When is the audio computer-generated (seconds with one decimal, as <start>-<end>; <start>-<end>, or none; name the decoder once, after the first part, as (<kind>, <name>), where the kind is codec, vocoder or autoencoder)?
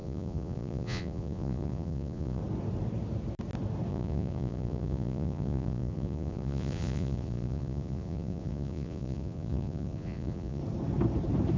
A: 0.0-2.4 (vocoder, Vocos); 3.9-10.6